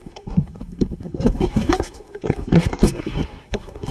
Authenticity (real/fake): fake